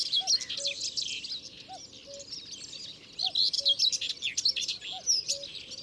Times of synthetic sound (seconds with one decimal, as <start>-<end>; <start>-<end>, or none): none